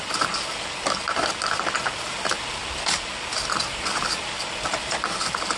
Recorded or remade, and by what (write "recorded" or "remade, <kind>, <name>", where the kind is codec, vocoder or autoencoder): recorded